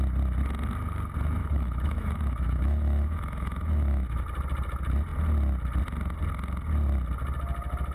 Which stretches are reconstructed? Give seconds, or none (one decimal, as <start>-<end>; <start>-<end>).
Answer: 1.4-4.2